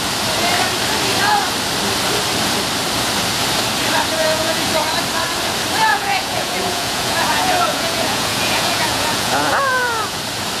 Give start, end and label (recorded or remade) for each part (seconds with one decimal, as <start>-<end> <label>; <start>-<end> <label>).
0.0-4.2 recorded; 4.2-4.7 remade; 4.7-5.9 recorded; 5.9-10.2 remade; 10.2-10.6 recorded

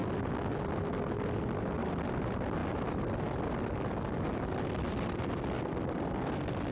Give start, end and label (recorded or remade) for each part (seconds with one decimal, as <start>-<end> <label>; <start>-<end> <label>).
0.0-6.7 recorded

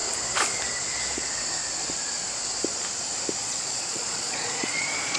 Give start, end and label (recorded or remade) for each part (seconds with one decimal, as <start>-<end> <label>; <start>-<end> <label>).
0.0-3.4 recorded; 3.4-5.2 remade

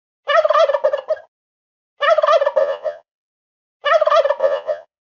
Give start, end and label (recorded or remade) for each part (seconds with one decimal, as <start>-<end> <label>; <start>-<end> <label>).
0.0-2.6 recorded; 2.6-3.3 remade; 3.3-4.4 recorded; 4.4-5.0 remade

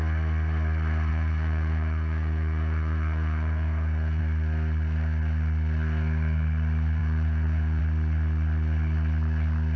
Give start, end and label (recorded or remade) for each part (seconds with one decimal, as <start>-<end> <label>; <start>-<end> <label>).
0.0-1.1 recorded; 1.1-4.2 remade; 4.2-7.0 recorded; 7.0-7.8 remade; 7.8-9.8 recorded